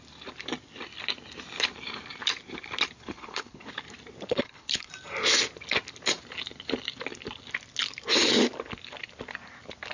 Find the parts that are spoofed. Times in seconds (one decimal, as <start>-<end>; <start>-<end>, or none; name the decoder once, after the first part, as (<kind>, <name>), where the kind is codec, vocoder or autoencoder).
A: 3.0-3.7 (codec, HILCodec); 4.3-4.9